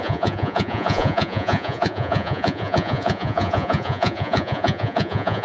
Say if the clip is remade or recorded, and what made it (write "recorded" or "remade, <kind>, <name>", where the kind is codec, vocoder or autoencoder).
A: remade, vocoder, Vocos